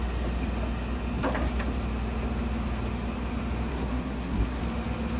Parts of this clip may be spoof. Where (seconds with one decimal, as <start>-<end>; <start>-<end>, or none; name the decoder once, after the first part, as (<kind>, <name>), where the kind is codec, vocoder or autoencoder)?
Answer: 3.7-4.6 (codec, SNAC)